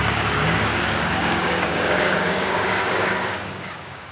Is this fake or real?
fake